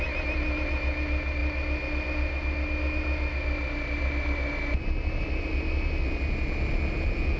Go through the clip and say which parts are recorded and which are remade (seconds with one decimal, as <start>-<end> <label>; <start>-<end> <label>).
0.0-7.4 recorded